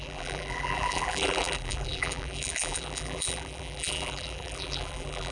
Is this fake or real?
fake